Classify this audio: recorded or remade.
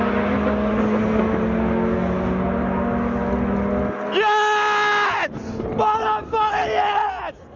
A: recorded